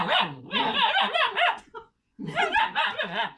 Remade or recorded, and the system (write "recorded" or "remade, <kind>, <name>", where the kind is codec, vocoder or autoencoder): remade, vocoder, Vocos